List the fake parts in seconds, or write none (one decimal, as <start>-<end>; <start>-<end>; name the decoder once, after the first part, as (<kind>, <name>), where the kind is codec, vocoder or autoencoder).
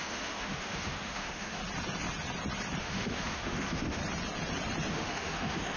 0.0-1.6 (autoencoder, DAC-VAE); 2.8-4.0; 4.9-5.8